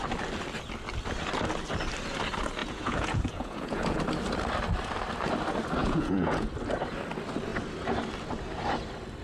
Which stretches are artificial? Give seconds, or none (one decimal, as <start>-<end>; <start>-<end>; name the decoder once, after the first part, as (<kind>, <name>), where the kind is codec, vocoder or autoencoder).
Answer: 2.6-4.0 (vocoder, Vocos); 5.8-6.5